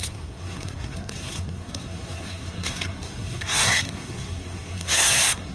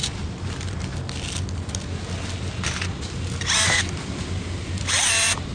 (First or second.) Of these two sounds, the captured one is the second